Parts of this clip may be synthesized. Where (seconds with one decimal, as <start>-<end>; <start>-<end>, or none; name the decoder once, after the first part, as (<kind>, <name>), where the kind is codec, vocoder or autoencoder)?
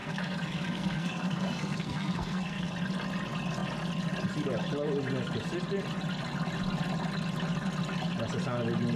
0.0-2.7 (codec, SNAC)